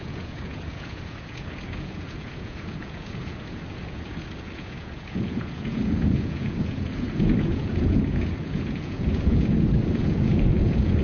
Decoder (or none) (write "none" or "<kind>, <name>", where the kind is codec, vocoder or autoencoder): vocoder, Vocos